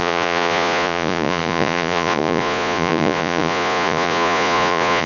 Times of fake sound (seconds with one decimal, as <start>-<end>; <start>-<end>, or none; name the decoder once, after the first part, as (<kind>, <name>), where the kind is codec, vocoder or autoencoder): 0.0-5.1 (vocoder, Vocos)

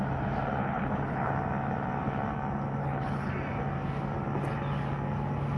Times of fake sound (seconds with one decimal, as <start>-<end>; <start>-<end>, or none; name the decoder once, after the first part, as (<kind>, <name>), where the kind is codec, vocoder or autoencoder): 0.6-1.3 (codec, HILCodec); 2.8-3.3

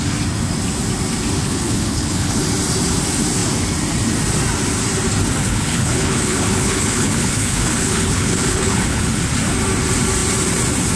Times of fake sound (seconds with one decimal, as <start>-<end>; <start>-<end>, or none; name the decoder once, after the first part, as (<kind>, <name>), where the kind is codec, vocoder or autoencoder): 1.4-2.4 (codec, HILCodec); 5.4-9.2